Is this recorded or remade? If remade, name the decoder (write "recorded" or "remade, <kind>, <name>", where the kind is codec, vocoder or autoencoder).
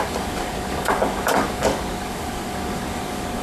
remade, codec, DAC